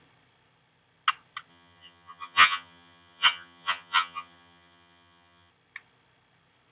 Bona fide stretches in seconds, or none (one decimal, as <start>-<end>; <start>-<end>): 0.0-1.5; 5.5-6.7